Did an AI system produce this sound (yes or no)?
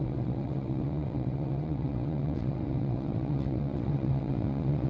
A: yes